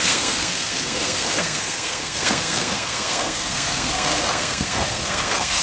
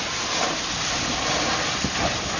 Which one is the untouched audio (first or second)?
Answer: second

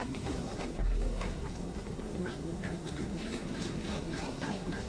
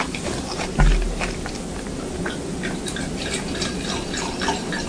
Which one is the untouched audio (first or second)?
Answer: second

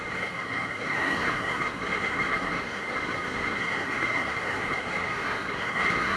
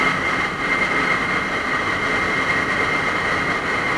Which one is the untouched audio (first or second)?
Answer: second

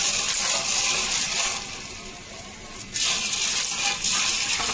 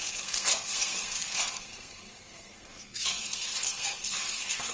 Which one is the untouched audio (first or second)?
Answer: first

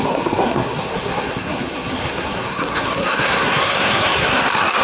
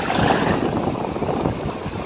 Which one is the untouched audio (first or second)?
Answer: second